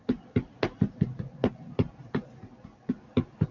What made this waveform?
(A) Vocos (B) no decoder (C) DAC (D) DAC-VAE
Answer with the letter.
B